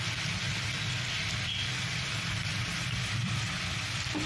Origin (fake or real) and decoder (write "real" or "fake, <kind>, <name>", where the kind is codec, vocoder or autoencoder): fake, vocoder, BigVGAN v2